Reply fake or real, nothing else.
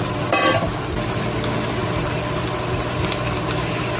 real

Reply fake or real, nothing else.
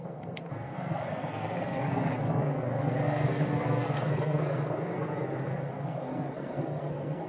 fake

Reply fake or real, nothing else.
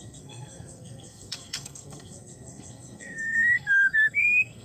fake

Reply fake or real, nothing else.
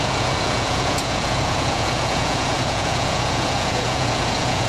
fake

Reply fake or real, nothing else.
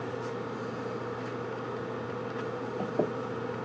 real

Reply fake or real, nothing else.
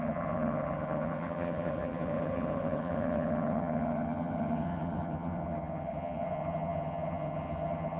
fake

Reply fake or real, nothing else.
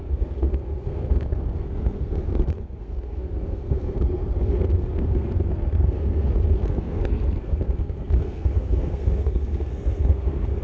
fake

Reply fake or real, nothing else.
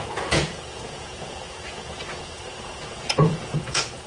fake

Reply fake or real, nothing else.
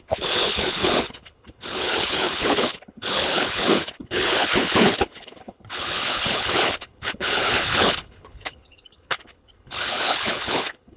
fake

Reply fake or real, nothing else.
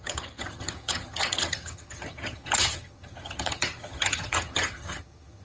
fake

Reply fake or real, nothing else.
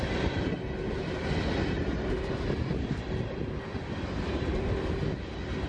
real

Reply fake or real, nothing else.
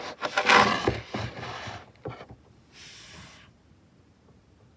real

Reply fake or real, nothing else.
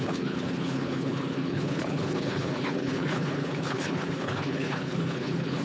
fake